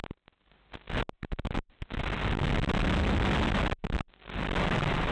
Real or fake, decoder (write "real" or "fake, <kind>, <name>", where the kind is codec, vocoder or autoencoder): real